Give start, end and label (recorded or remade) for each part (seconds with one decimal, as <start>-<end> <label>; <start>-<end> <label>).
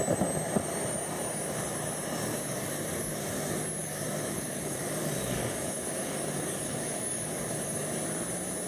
0.0-2.3 recorded; 2.3-3.2 remade; 3.2-3.8 recorded; 3.8-7.8 remade; 7.8-8.7 recorded